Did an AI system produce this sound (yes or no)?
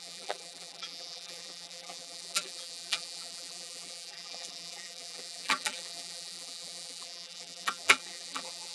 yes